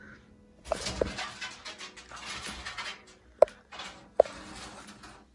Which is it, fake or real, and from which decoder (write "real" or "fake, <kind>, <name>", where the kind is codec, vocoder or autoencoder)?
real